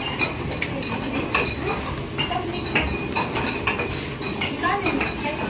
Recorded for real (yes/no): yes